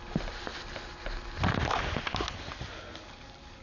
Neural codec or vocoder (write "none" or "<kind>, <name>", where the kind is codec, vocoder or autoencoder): none